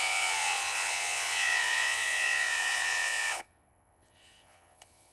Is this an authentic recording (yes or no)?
no